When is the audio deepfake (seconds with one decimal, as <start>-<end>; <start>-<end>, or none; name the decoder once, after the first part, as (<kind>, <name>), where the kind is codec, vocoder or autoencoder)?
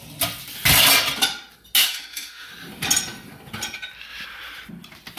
1.8-2.5 (autoencoder, DAC-VAE)